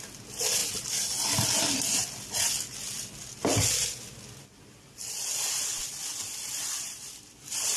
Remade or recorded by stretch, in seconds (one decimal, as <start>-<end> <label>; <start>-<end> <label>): 0.0-7.8 recorded